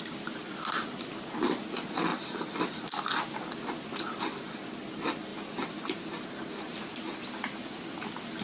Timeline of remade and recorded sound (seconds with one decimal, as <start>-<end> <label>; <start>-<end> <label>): 0.0-8.4 recorded